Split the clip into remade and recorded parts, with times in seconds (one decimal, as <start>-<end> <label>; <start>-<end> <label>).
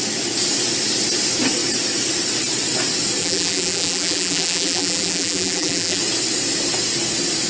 0.0-3.2 recorded; 3.2-6.0 remade; 6.0-7.5 recorded